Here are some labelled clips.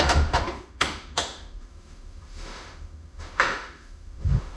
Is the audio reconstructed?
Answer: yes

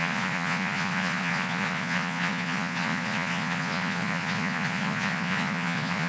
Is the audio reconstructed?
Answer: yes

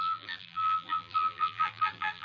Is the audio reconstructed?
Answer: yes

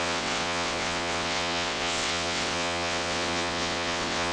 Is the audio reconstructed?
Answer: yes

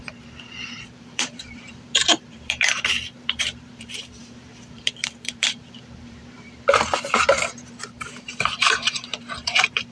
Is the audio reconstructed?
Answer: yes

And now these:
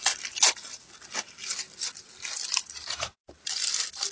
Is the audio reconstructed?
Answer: no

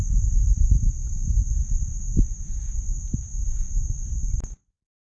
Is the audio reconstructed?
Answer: no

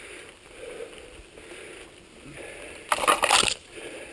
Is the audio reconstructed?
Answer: no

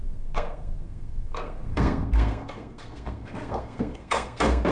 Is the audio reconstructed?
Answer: yes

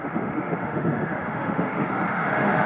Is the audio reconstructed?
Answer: yes